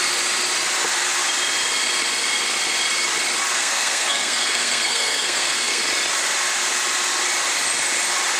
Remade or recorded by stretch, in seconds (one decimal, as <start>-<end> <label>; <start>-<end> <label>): 0.0-3.5 recorded; 3.5-5.8 remade; 5.8-8.4 recorded